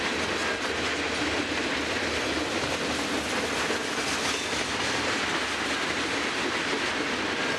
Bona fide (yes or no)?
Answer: yes